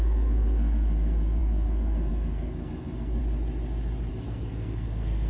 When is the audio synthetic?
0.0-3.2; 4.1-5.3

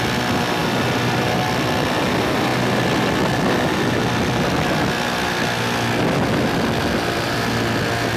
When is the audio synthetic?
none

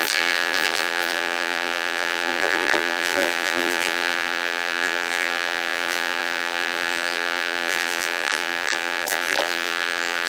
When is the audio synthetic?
0.0-10.3